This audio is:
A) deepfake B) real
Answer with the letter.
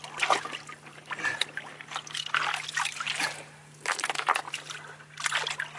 B